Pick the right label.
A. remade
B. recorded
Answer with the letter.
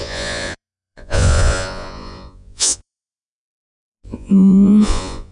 A